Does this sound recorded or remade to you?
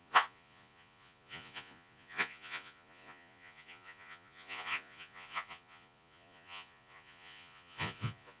remade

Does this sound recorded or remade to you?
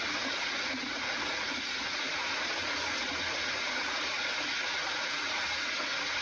remade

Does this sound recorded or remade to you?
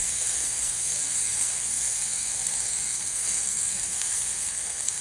remade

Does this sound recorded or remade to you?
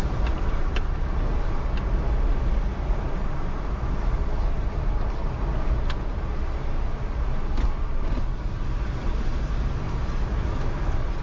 recorded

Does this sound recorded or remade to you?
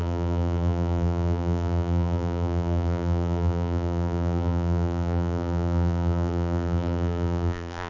remade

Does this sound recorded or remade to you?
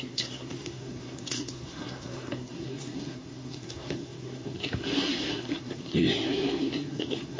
remade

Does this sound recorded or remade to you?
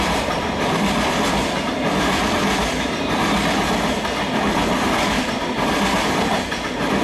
recorded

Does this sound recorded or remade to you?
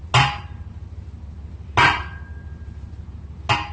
recorded